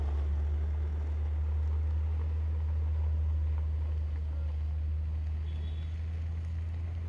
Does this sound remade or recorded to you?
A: recorded